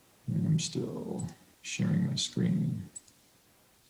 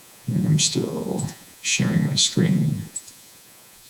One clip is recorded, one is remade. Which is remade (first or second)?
second